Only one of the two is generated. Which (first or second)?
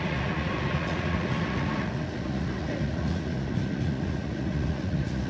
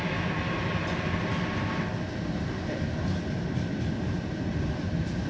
first